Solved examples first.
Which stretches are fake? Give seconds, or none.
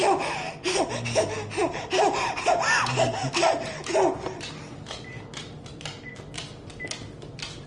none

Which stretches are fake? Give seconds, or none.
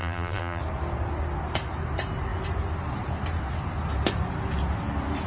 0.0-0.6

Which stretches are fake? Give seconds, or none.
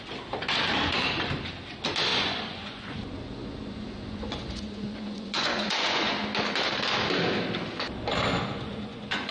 2.1-6.1; 8.3-9.3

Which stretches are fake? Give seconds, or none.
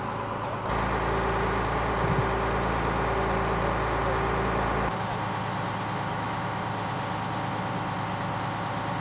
6.1-6.6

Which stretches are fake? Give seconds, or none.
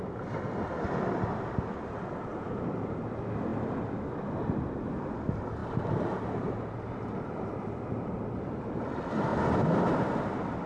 2.3-3.0; 5.6-7.7